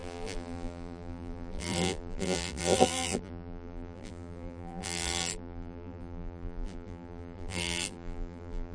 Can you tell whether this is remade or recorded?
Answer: remade